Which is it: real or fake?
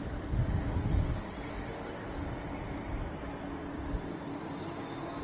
real